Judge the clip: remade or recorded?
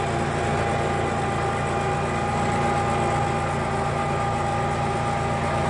recorded